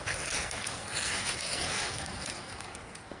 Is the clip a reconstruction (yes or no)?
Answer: yes